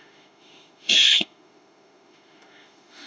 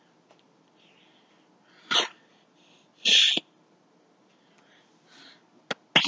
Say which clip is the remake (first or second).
first